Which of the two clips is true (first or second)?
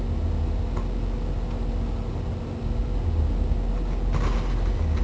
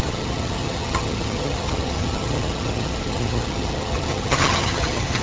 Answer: first